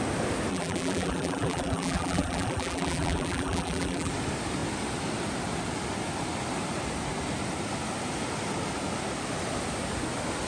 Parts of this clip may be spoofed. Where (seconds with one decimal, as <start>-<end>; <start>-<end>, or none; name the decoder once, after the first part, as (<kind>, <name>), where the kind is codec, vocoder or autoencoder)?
0.5-4.1 (vocoder, BigVGAN v2)